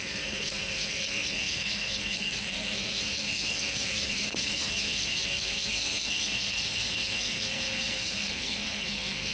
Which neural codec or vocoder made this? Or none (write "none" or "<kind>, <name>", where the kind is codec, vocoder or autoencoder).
codec, SNAC